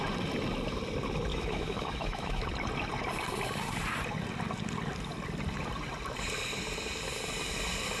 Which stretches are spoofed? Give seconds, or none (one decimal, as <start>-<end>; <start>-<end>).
1.3-2.5

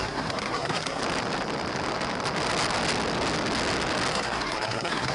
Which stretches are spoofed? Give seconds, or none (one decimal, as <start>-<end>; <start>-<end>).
0.0-1.0; 4.1-5.1